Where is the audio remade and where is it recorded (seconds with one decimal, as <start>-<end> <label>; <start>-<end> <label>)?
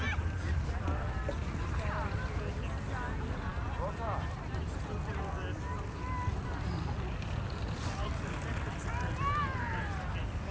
0.0-10.5 recorded